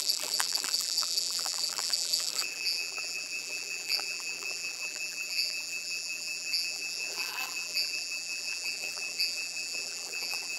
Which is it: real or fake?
fake